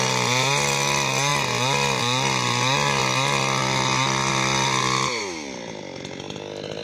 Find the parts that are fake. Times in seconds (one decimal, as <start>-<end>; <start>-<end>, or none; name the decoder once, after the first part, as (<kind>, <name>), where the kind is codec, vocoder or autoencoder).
none